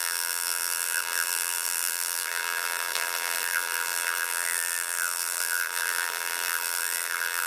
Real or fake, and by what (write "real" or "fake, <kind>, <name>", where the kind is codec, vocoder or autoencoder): fake, vocoder, BigVGAN v2